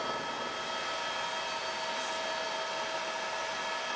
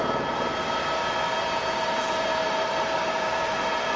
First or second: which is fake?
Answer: second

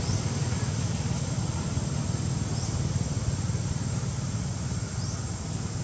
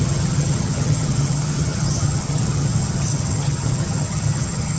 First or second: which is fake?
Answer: second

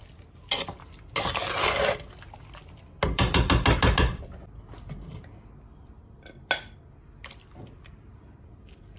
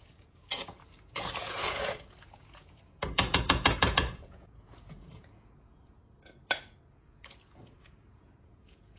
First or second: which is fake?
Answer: second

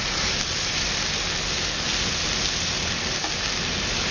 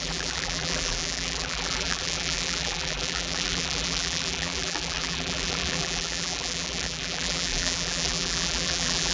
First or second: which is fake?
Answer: second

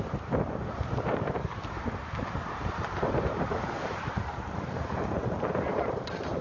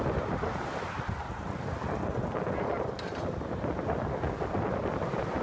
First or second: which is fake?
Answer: first